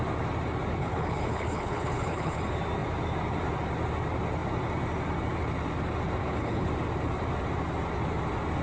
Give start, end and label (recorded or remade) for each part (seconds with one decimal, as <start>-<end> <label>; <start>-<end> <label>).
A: 0.0-0.8 recorded; 0.8-2.4 remade; 2.4-6.2 recorded; 6.2-6.7 remade; 6.7-8.6 recorded